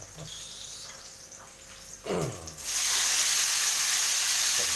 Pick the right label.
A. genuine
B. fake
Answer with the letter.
A